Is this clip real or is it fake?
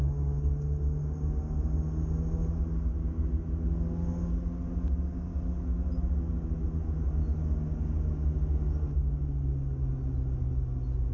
real